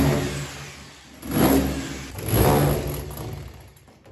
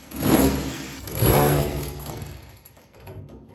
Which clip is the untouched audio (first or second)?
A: first